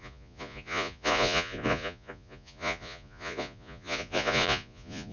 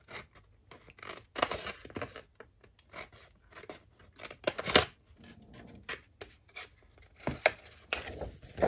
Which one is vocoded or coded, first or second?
first